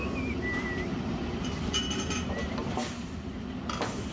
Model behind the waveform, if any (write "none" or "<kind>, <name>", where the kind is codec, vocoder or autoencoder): none